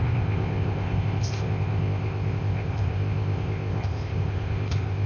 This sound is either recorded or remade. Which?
remade